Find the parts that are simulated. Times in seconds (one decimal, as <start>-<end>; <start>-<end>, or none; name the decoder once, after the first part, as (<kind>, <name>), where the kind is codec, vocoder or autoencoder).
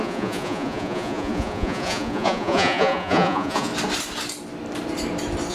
0.0-3.7 (vocoder, Vocos)